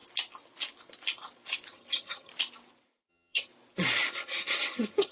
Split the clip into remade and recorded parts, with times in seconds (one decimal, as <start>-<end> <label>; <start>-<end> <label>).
0.0-1.7 recorded; 1.7-2.3 remade; 2.3-3.1 recorded; 3.1-3.5 remade; 3.5-4.1 recorded; 4.1-5.1 remade